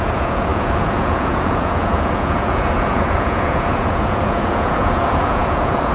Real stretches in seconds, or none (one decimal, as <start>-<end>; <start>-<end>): none